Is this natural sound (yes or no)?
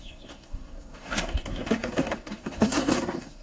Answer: no